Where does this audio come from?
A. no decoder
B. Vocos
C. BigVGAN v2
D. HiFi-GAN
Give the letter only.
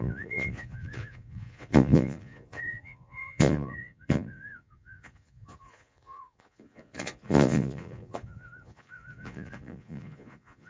B